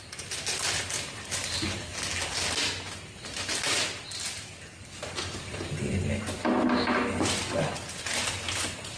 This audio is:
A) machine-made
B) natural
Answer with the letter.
B